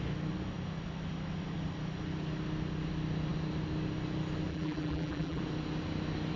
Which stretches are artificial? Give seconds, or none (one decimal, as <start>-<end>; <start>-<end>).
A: 4.5-5.4